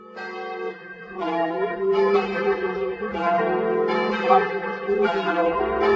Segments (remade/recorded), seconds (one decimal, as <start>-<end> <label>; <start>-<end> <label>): 0.0-0.7 recorded; 0.7-3.4 remade; 3.4-4.1 recorded; 4.1-5.6 remade; 5.6-6.0 recorded